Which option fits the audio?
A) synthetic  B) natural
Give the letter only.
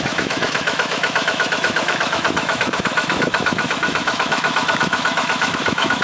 A